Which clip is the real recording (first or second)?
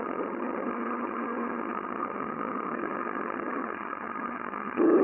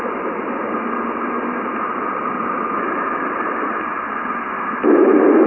second